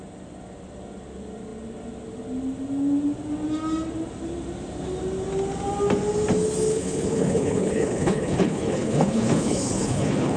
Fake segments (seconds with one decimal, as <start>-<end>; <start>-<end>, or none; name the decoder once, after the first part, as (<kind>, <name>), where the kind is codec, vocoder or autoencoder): 6.7-10.4 (codec, HILCodec)